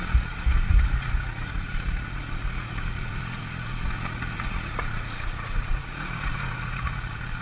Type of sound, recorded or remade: remade